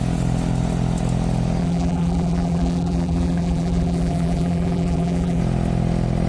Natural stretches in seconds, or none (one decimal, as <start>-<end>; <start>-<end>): 0.0-1.6; 5.4-6.3